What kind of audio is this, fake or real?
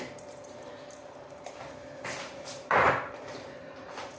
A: fake